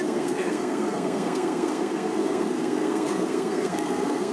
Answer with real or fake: fake